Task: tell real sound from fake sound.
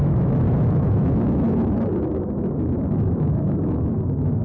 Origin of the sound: fake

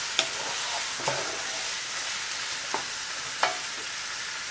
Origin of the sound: real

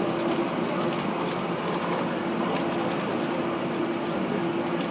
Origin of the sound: real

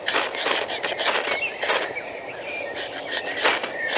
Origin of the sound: real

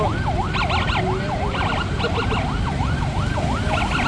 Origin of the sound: real